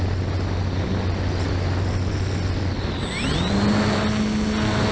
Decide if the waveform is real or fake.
real